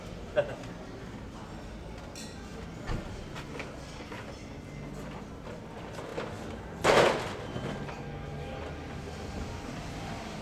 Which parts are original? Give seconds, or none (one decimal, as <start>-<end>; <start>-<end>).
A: 0.0-10.4